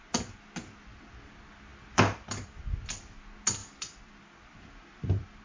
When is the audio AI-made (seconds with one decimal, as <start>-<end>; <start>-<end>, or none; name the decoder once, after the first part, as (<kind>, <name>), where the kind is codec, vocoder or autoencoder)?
1.7-2.6 (vocoder, BigVGAN v2); 3.6-5.4